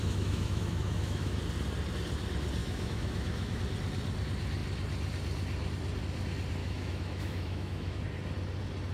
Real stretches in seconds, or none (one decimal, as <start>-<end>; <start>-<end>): 1.4-2.6; 3.6-6.6; 8.0-8.9